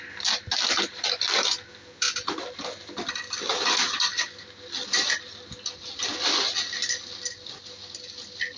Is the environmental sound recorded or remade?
recorded